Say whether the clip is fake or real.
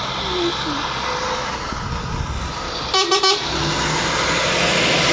real